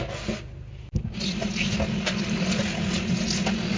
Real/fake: real